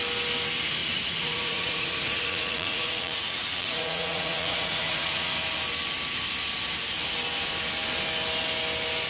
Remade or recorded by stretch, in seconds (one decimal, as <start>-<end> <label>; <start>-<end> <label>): 0.0-0.8 recorded; 0.8-5.3 remade; 5.3-9.1 recorded